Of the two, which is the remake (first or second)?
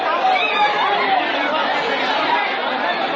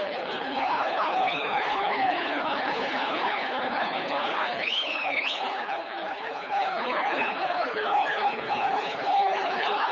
second